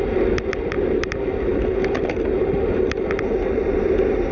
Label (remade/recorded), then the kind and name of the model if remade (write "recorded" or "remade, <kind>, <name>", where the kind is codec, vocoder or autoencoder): recorded